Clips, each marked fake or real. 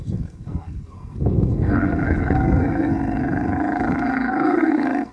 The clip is fake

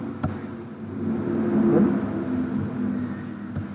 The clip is real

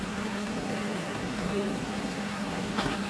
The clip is fake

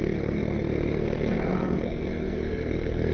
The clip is fake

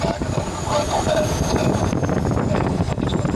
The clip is fake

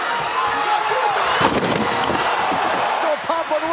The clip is real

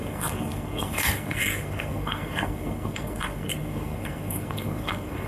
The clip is fake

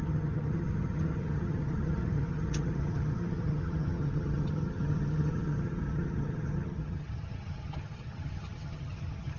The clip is fake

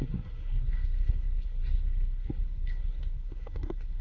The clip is fake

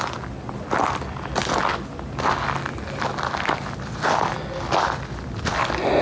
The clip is real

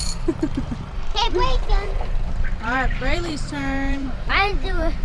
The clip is fake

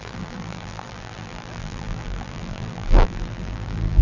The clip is fake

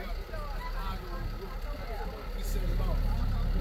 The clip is real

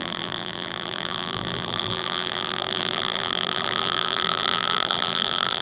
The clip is fake